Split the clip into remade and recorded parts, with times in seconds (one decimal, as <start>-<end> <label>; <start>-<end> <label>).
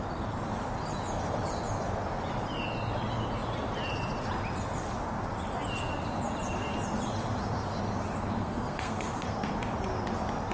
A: 0.0-8.4 recorded; 8.4-9.5 remade; 9.5-10.5 recorded